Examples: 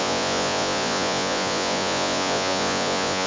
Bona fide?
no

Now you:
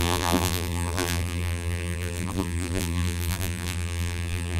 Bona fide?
no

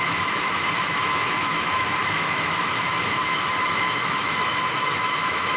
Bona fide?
no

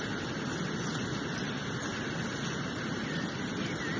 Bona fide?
yes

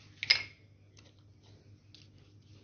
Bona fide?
yes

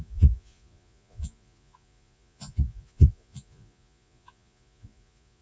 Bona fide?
no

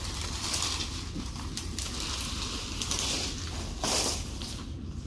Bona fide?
yes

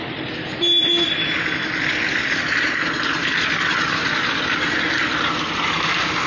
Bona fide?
yes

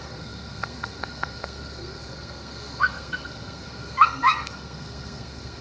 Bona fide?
no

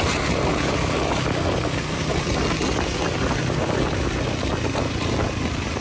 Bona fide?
yes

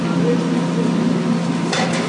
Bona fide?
yes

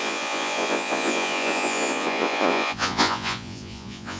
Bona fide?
no